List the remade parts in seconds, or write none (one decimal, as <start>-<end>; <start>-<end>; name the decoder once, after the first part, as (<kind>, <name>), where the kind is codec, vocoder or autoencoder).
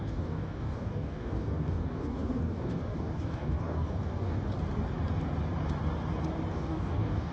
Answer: 0.0-4.4 (codec, DAC); 6.5-7.3